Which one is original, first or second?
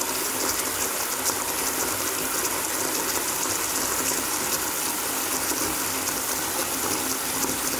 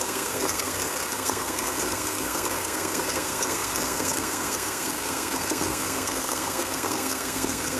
first